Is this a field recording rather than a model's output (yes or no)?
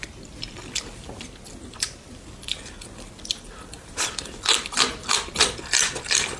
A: yes